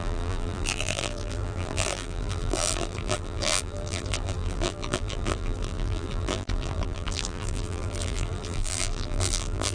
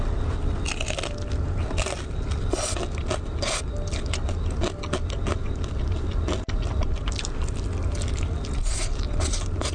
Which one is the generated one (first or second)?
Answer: first